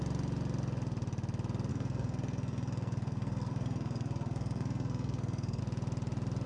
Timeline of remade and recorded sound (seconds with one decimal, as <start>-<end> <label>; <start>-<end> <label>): 0.0-1.7 recorded; 1.7-5.6 remade; 5.6-6.5 recorded